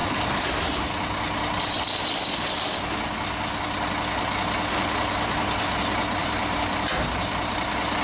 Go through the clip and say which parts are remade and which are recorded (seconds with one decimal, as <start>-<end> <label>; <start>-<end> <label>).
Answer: 0.0-6.2 recorded; 6.2-7.0 remade; 7.0-8.0 recorded